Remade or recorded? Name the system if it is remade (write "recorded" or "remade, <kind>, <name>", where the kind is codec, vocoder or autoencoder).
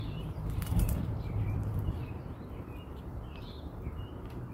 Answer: remade, vocoder, BigVGAN v2